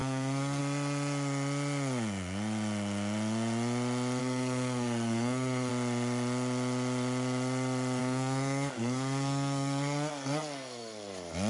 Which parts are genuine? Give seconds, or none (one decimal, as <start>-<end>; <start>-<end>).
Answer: 0.6-4.2; 5.7-8.0; 11.1-11.5